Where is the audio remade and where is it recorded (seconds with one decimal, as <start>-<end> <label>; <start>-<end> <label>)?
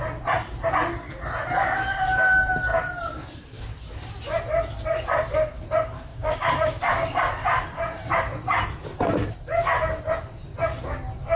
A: 0.0-6.1 recorded; 6.1-6.8 remade; 6.8-11.4 recorded